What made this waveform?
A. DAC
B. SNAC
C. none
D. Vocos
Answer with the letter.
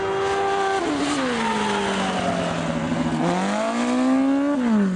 C